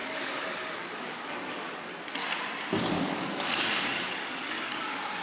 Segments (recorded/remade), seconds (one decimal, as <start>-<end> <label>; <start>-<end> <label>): 0.0-1.9 remade; 1.9-2.8 recorded; 2.8-5.2 remade